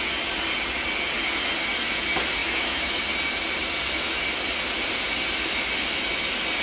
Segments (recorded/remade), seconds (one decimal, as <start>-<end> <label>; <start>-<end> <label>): 0.0-2.4 recorded; 2.4-3.0 remade; 3.0-6.6 recorded